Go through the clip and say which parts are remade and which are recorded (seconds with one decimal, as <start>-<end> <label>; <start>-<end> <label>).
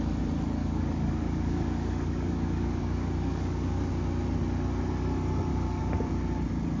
0.0-0.6 recorded; 0.6-3.8 remade; 3.8-5.5 recorded; 5.5-6.1 remade; 6.1-6.8 recorded